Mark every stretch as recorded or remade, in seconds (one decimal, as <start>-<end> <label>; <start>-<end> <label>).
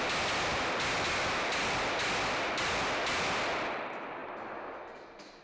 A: 0.0-5.4 recorded